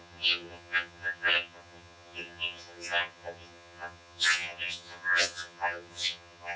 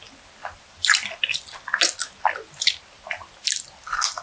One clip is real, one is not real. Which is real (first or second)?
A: second